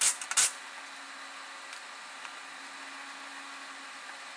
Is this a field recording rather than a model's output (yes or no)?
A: yes